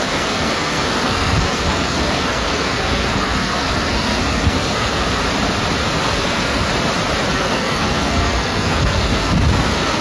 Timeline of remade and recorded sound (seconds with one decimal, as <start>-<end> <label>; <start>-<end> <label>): 0.0-5.2 remade; 5.2-6.0 recorded; 6.0-6.7 remade; 6.7-7.3 recorded; 7.3-10.0 remade

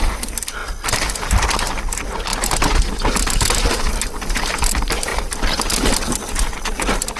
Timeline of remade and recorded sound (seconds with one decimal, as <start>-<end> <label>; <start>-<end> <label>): 0.0-7.2 recorded

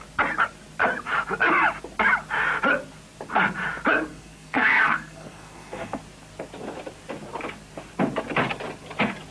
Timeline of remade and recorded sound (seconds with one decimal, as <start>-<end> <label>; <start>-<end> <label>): 0.0-4.1 recorded; 4.1-6.0 remade; 6.0-9.3 recorded

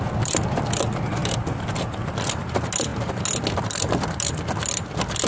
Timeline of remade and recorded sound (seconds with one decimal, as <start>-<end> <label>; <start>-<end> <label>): 0.0-5.3 recorded

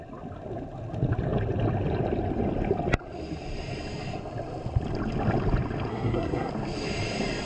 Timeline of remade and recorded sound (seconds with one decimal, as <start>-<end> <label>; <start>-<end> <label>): 0.0-5.9 recorded; 5.9-6.5 remade; 6.5-7.5 recorded